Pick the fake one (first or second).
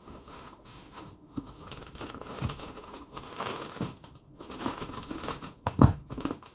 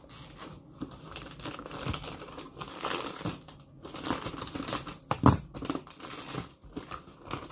first